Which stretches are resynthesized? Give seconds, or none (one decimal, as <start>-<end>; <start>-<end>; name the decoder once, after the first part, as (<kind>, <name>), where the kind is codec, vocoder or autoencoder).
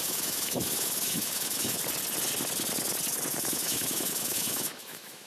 0.0-1.8 (autoencoder, DAC-VAE); 3.3-5.3